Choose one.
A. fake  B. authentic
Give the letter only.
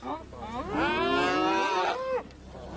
B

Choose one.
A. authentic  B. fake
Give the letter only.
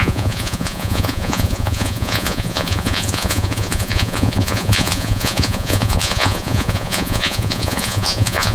B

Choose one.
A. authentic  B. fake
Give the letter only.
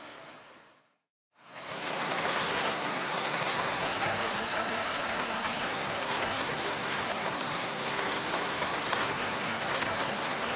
B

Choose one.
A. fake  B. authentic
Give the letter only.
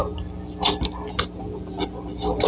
B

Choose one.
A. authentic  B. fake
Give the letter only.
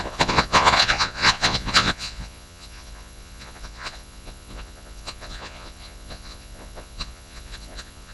B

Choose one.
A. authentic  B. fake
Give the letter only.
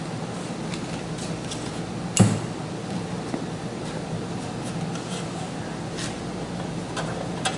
A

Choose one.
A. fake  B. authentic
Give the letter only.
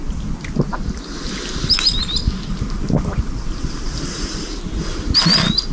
B